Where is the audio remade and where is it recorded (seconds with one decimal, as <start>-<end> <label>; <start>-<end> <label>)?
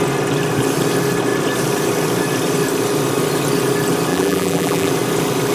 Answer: 0.0-4.1 recorded; 4.1-4.9 remade; 4.9-5.5 recorded